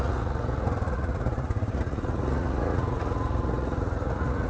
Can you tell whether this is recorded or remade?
remade